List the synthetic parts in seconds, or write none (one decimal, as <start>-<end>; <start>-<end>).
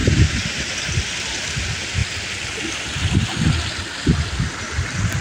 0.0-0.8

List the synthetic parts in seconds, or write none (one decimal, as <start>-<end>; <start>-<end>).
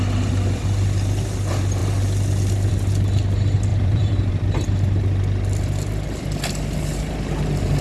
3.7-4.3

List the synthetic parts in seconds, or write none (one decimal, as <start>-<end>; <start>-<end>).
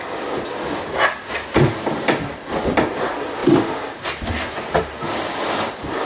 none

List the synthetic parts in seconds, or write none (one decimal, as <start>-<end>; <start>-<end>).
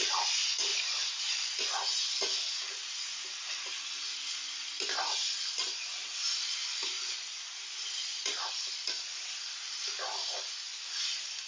0.7-2.0; 6.6-9.8